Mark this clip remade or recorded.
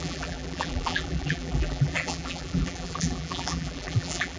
remade